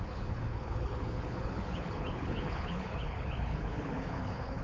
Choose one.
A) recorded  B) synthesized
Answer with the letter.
B